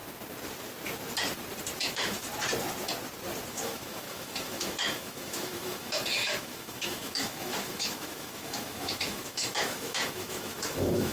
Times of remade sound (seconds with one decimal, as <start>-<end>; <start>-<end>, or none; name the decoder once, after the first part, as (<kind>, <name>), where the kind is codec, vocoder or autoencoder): 1.8-2.3 (autoencoder, DAC-VAE); 3.5-11.1